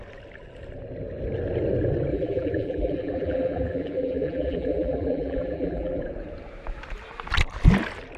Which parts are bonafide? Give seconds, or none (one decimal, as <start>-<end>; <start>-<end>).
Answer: 0.0-2.1; 6.0-8.2